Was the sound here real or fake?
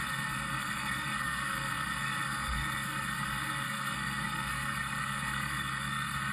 fake